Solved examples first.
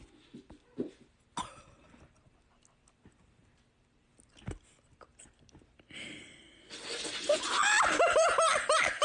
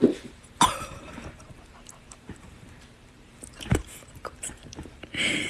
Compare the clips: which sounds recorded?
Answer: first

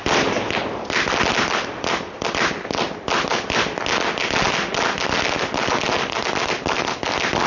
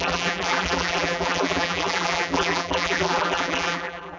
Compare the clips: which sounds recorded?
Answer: first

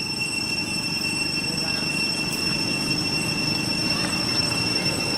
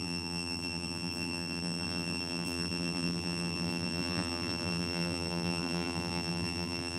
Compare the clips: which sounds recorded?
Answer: first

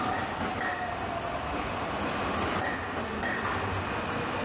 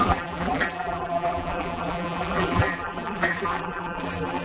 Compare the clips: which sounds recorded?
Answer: first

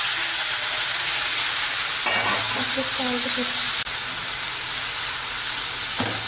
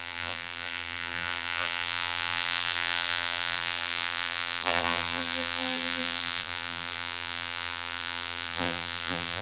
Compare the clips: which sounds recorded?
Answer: first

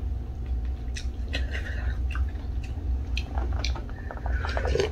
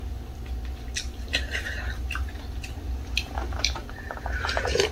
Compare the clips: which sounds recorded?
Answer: first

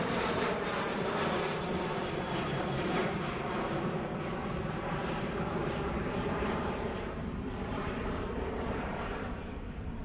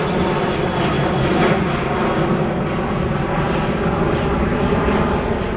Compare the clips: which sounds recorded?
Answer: second